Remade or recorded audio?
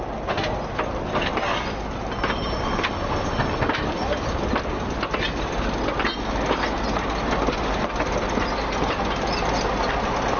recorded